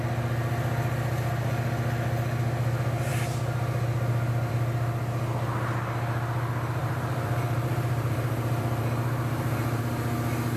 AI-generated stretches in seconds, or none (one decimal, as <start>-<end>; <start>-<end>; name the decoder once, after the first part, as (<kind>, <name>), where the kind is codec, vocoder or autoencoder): 6.8-9.8 (vocoder, BigVGAN v2)